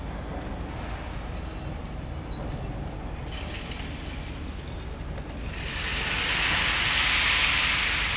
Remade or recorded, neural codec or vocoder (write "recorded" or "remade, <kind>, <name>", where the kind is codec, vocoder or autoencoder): recorded